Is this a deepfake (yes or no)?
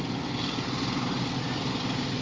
no